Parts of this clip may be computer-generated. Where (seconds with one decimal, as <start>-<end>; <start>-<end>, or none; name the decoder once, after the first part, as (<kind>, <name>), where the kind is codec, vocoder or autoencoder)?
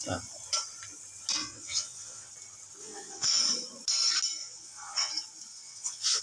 1.4-2.3 (vocoder, WaveNeXt); 2.8-3.4; 4.4-5.1; 5.5-6.2